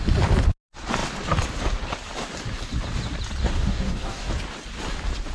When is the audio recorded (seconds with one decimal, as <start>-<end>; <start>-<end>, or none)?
0.0-3.4; 4.3-5.3